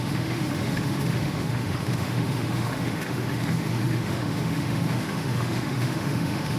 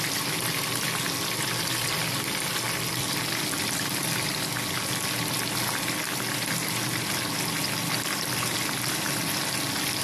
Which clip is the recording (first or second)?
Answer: second